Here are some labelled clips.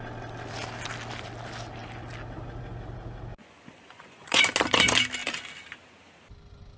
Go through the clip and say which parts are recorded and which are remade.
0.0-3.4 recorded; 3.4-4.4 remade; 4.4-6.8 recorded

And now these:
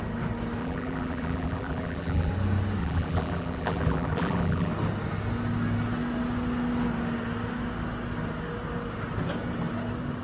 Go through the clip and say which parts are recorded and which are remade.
0.0-0.6 recorded; 0.6-2.3 remade; 2.3-2.8 recorded; 2.8-4.7 remade; 4.7-10.2 recorded

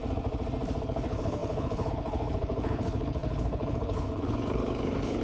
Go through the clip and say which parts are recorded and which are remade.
0.0-0.8 recorded; 0.8-5.2 remade